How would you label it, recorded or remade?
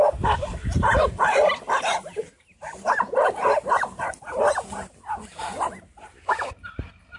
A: remade